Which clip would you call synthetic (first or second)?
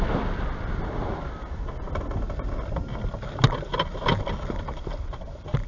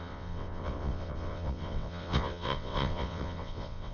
second